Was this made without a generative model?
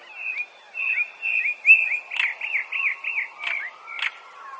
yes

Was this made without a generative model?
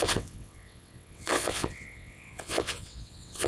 no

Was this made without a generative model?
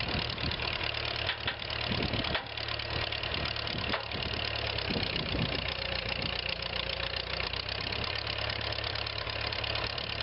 no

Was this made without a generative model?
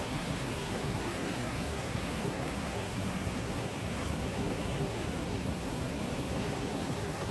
no